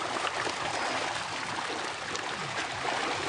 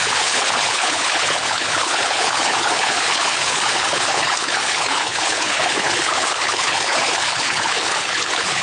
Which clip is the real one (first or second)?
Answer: first